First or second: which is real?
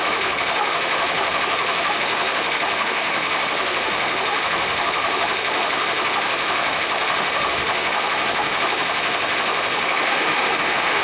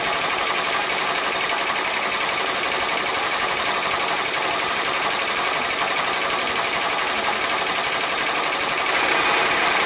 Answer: second